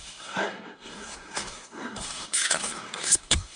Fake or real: fake